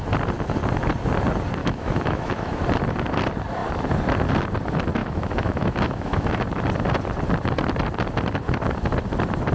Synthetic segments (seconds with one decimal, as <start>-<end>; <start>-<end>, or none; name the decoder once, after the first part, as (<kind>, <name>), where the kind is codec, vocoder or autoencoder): 1.6-2.6 (autoencoder, DAC-VAE); 5.0-6.4